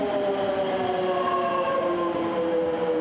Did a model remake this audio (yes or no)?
no